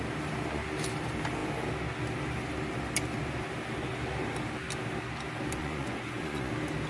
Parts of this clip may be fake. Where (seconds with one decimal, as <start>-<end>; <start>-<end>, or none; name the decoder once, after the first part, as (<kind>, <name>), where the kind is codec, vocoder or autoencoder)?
5.6-6.5 (vocoder, Vocos)